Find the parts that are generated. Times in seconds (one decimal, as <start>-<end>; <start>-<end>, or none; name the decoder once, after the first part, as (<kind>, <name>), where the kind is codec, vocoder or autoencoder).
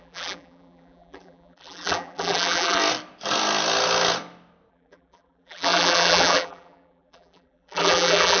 0.0-2.8 (vocoder, BigVGAN v2); 4.7-8.4